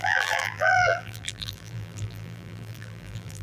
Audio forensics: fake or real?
fake